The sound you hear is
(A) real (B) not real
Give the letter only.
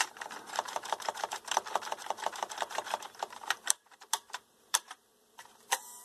B